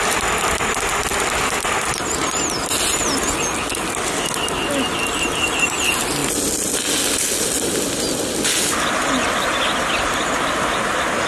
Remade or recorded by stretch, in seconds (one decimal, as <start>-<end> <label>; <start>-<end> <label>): 0.0-11.3 recorded